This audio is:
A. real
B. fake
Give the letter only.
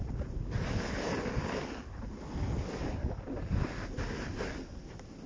A